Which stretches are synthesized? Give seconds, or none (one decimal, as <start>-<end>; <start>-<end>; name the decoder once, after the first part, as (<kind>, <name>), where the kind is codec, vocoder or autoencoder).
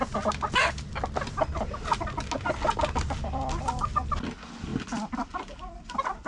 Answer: 4.7-5.8 (vocoder, BigVGAN v2)